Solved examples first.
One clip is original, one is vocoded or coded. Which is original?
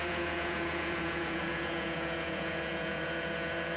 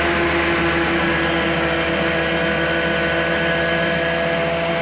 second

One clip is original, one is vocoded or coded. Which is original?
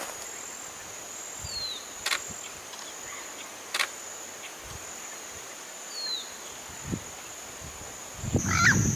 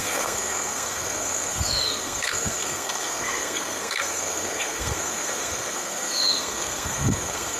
first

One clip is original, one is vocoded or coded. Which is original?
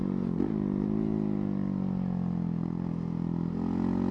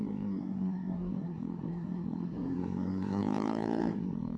first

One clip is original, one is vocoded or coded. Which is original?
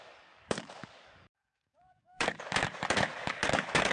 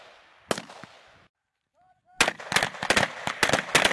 second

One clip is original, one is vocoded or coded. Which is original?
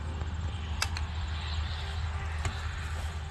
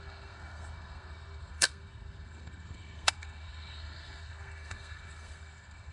first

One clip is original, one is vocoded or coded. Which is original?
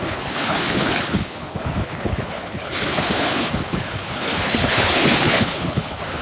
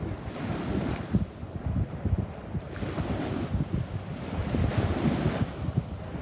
second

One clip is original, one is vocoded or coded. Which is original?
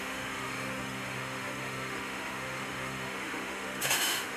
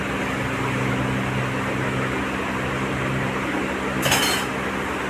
second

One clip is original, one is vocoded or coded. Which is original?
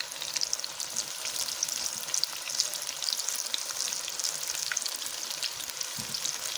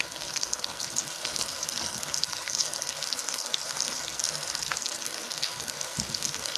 first